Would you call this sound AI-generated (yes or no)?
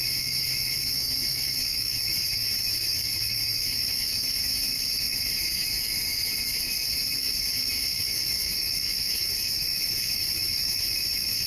yes